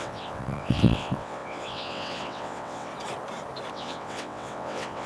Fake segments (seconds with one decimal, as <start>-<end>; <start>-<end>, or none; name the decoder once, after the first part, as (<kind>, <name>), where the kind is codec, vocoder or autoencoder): 0.0-2.9 (vocoder, WaveNeXt); 3.7-5.1